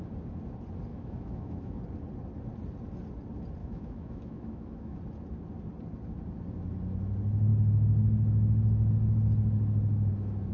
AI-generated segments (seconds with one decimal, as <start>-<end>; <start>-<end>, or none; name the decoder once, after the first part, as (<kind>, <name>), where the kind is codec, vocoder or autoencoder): 0.9-1.8 (autoencoder, DAC-VAE); 3.6-5.0